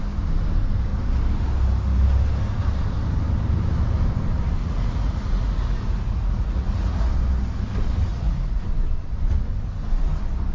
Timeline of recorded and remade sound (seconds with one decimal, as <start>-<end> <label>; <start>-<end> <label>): 0.0-4.6 recorded; 4.6-7.1 remade; 7.1-8.1 recorded; 8.1-8.6 remade; 8.6-10.5 recorded

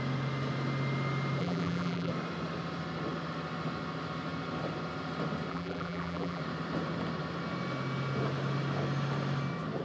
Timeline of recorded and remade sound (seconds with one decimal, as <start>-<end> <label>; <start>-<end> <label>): 0.0-1.4 recorded; 1.4-2.1 remade; 2.1-5.5 recorded; 5.5-6.4 remade; 6.4-9.8 recorded

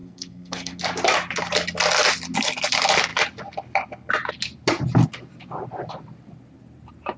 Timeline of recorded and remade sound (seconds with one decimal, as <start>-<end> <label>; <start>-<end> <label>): 0.0-0.8 remade; 0.8-7.2 recorded

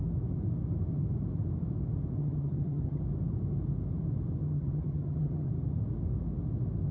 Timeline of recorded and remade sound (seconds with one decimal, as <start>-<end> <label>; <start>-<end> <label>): 0.0-2.2 recorded; 2.2-3.0 remade; 3.0-4.4 recorded; 4.4-5.5 remade; 5.5-6.9 recorded

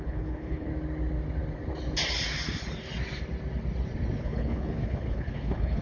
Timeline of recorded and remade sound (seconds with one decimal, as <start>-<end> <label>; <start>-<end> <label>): 0.0-0.7 remade; 0.7-4.2 recorded; 4.2-5.8 remade